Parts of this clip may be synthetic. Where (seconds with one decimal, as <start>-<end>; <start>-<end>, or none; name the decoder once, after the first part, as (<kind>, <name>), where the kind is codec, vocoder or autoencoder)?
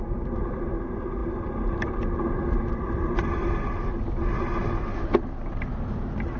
none